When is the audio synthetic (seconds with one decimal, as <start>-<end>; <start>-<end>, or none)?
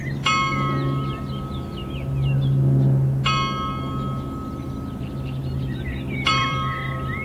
5.4-7.2